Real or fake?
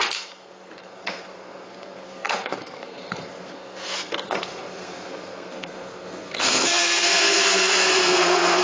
fake